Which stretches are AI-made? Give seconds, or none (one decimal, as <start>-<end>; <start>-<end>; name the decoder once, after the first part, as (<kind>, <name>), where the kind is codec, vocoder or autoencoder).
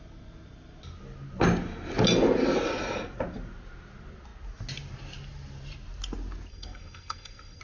6.5-7.6 (codec, SNAC)